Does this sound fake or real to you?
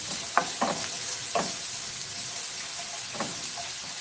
fake